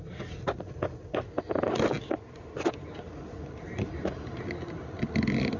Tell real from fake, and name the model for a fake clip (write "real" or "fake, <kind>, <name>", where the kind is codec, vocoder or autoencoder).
real